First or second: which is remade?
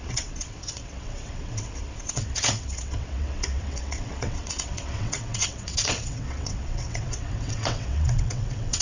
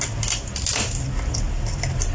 first